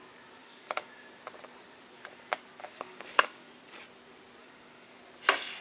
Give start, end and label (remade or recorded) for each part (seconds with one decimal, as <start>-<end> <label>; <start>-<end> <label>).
0.0-0.4 recorded; 0.4-1.1 remade; 1.1-2.6 recorded; 2.6-3.5 remade; 3.5-4.4 recorded; 4.4-5.0 remade; 5.0-5.6 recorded